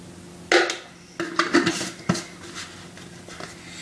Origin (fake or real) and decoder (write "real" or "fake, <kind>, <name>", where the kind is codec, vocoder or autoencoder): real